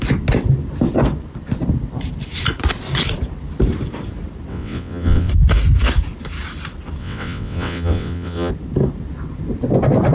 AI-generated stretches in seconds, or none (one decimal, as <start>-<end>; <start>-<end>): 4.5-5.3; 7.0-8.5